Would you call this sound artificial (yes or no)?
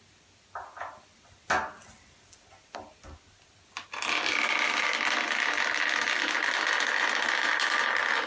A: no